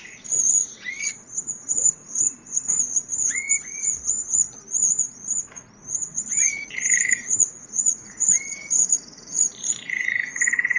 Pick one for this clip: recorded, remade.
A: remade